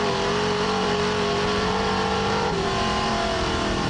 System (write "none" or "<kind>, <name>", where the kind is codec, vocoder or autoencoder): vocoder, BigVGAN v2